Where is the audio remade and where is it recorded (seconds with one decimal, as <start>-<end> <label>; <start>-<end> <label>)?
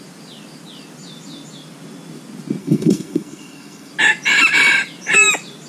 0.0-2.6 recorded; 2.6-3.9 remade; 3.9-5.7 recorded